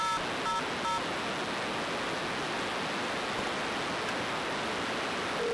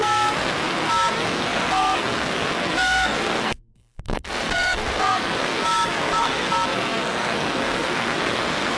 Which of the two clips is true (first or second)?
first